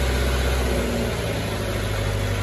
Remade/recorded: recorded